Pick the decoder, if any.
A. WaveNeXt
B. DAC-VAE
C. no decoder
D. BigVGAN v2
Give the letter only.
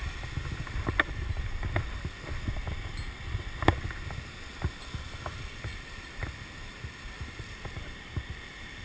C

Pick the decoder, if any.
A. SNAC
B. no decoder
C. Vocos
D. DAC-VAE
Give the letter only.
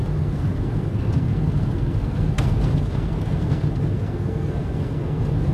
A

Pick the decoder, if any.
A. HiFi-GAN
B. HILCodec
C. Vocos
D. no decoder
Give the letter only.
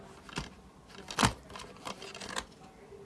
D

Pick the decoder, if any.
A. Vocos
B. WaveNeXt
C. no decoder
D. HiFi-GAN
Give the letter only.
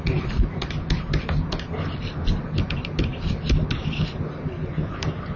C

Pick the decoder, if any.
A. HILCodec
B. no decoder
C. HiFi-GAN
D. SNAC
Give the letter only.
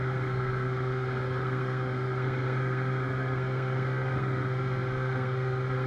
D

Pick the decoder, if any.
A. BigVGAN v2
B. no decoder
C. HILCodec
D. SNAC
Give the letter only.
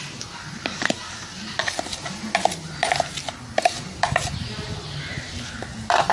B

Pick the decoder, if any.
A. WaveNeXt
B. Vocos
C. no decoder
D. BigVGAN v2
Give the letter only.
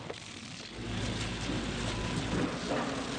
C